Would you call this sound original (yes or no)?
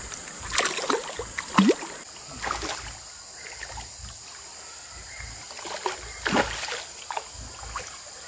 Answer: yes